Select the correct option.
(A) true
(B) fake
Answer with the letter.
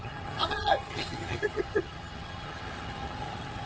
B